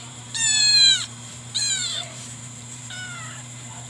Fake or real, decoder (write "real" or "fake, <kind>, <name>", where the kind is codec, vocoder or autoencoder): fake, vocoder, BigVGAN v2